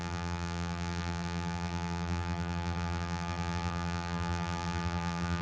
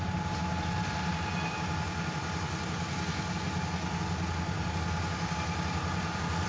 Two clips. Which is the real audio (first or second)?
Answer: second